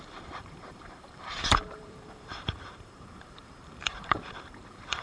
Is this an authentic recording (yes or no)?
no